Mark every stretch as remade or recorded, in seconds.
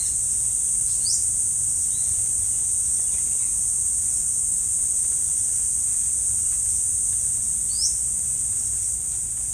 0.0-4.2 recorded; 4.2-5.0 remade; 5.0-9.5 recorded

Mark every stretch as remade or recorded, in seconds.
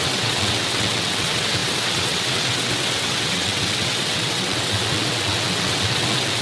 0.0-6.4 remade